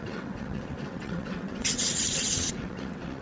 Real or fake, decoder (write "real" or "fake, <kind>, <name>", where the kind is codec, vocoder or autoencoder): fake, vocoder, WaveNeXt